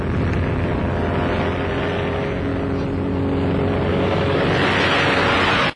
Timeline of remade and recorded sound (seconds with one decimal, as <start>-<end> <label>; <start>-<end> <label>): 0.0-3.9 recorded; 3.9-4.4 remade; 4.4-5.8 recorded